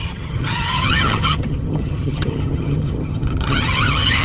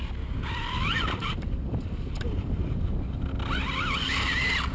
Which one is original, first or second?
second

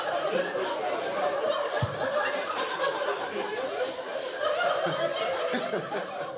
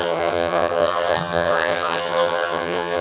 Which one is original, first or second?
first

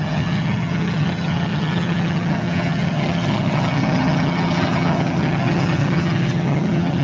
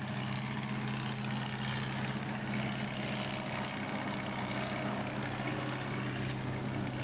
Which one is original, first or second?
second